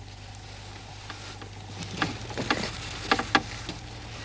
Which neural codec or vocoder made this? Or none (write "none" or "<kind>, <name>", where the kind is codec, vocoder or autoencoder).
none